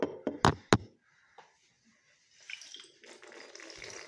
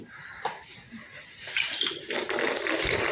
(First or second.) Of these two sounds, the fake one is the second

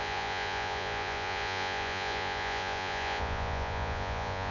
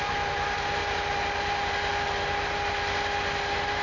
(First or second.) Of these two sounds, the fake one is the first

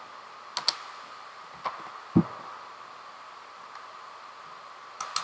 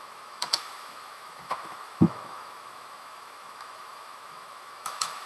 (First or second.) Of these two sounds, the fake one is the second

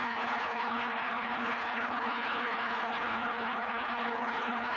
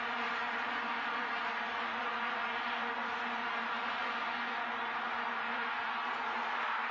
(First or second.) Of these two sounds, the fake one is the first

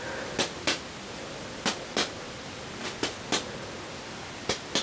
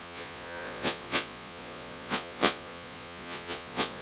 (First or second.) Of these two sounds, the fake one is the second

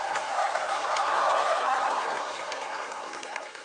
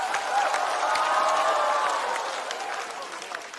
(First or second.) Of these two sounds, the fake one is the first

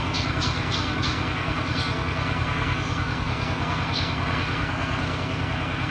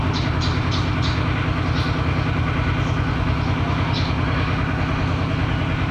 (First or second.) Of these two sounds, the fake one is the first